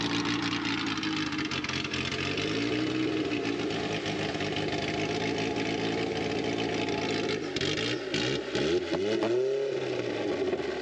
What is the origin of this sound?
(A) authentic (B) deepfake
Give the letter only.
A